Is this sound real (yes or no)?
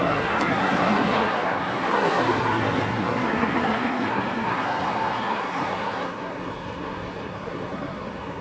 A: no